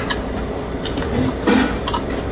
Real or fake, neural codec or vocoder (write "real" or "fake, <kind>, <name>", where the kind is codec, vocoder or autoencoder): real